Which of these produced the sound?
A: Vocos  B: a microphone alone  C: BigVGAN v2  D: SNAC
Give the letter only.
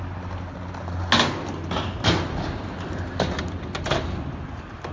B